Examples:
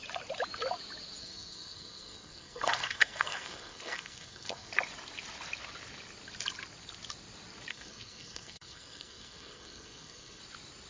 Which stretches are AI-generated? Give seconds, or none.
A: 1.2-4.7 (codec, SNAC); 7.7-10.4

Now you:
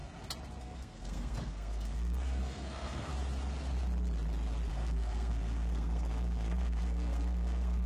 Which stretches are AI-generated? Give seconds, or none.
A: 0.6-3.1 (codec, SNAC); 4.7-7.9

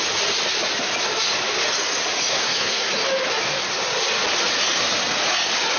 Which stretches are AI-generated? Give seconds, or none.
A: 2.3-2.9 (codec, SNAC)

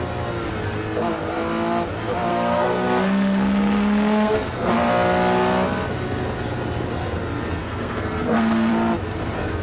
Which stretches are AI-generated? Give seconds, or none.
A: 2.3-4.7 (codec, SNAC); 7.6-8.7

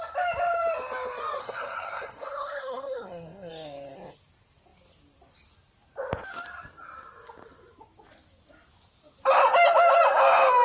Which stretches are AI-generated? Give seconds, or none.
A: 1.4-3.5 (codec, SNAC)

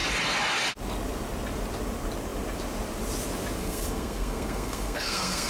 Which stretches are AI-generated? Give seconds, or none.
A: 3.6-5.5 (codec, SNAC)

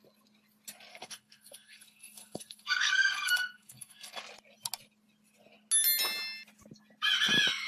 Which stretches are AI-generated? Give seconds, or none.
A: 0.9-4.2 (codec, SNAC)